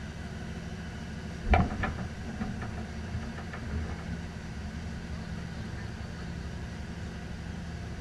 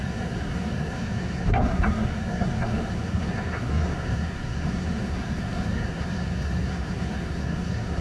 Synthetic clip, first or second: second